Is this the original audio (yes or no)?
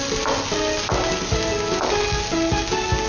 yes